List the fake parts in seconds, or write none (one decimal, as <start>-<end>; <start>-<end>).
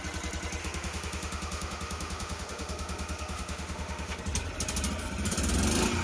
0.6-4.2